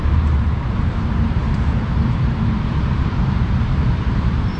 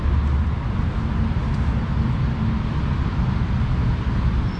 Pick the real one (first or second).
second